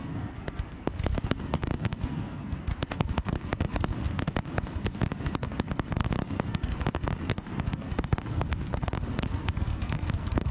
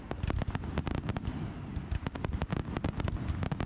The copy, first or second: first